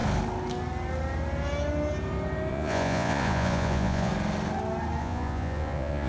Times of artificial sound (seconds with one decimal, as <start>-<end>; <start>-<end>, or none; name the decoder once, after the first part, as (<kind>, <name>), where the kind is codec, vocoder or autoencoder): 2.5-4.1 (vocoder, Vocos); 5.0-6.1